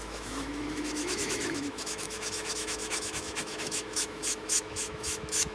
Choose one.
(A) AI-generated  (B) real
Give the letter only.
A